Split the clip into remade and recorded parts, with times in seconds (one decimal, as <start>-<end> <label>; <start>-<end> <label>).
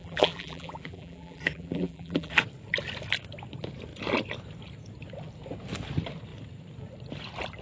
0.0-2.4 remade; 2.4-7.6 recorded